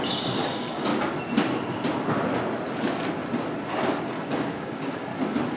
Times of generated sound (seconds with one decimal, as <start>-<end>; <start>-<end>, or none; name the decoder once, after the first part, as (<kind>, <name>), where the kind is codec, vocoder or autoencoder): 0.0-0.9 (codec, DAC); 4.3-5.1